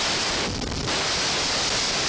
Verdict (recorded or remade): recorded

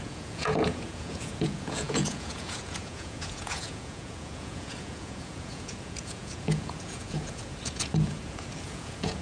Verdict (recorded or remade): remade